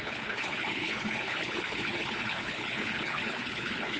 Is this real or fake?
fake